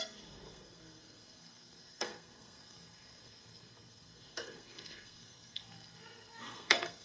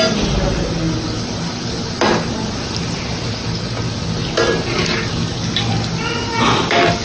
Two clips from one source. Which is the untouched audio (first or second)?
second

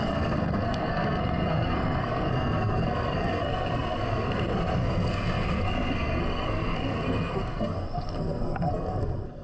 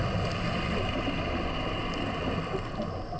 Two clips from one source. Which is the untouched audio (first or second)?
second